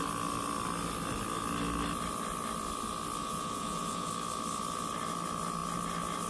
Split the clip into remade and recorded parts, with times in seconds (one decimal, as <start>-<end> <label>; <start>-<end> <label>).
0.0-3.2 recorded; 3.2-4.1 remade; 4.1-6.3 recorded